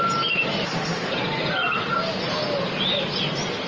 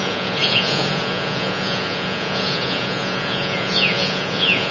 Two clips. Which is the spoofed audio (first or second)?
second